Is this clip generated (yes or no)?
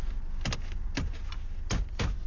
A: no